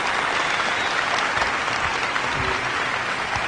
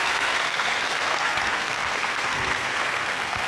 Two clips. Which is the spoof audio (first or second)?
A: second